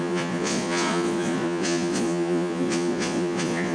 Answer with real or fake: fake